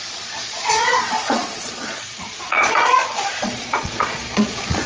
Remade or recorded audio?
remade